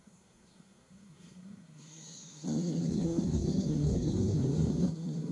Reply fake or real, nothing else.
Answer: fake